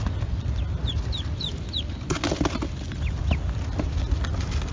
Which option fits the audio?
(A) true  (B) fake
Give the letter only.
A